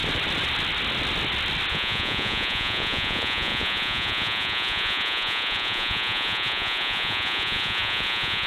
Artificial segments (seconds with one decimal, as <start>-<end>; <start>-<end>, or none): 1.7-8.5